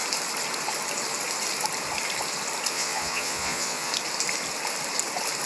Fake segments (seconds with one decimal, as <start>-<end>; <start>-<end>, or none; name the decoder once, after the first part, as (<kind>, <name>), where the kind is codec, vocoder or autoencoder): 2.7-3.9 (vocoder, Vocos)